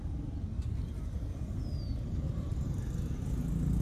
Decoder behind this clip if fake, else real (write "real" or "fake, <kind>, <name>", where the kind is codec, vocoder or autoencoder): real